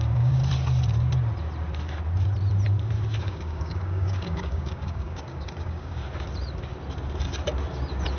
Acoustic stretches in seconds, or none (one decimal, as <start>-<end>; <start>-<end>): 0.4-3.2; 6.0-8.2